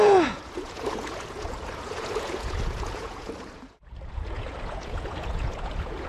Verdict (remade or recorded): remade